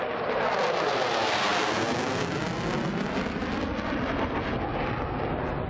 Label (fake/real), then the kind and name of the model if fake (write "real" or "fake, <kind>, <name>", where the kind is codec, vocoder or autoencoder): real